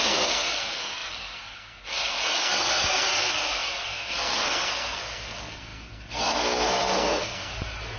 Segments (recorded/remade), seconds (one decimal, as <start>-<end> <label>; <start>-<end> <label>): 0.0-7.5 remade; 7.5-8.0 recorded

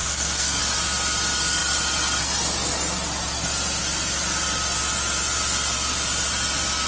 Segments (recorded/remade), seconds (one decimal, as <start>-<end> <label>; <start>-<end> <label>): 0.0-0.6 remade; 0.6-6.9 recorded